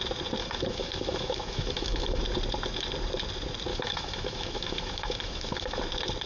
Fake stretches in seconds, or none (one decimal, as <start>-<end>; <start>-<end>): 0.4-2.2; 3.7-5.8